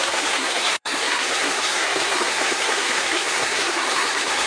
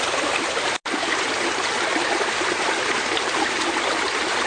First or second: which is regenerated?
first